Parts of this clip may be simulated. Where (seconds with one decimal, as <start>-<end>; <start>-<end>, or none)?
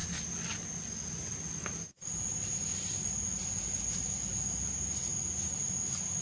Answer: none